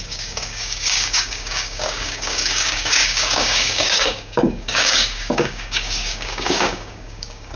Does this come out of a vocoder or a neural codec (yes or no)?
yes